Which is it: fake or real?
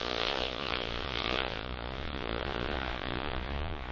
fake